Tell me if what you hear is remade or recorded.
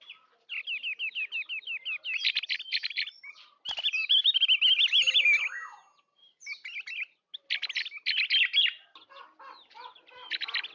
recorded